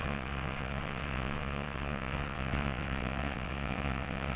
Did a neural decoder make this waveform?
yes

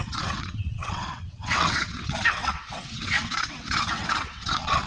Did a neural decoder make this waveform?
yes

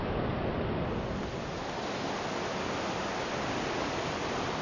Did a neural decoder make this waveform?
no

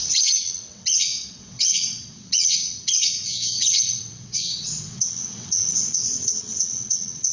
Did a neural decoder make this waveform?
yes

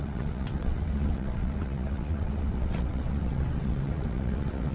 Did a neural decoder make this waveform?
yes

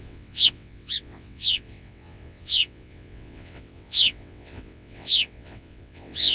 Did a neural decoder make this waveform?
yes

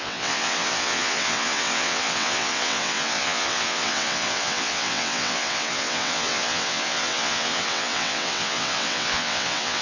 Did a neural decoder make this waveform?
yes